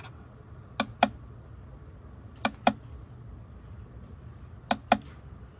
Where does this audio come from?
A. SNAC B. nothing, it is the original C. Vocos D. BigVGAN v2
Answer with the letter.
B